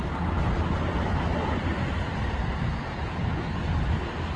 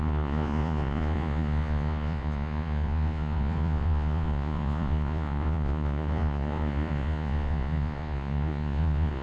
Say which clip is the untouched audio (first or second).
first